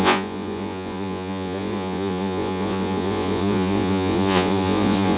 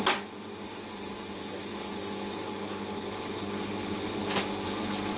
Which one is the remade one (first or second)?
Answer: first